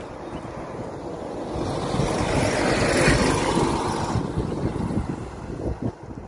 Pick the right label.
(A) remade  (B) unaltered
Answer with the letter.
B